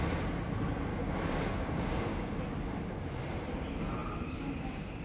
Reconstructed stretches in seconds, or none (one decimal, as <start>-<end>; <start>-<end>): 0.9-2.3